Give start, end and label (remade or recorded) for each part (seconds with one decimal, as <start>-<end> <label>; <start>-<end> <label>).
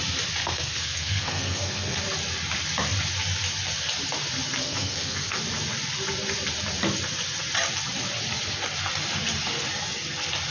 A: 0.0-0.4 recorded; 0.4-2.0 remade; 2.0-4.6 recorded; 4.6-5.4 remade; 5.4-10.5 recorded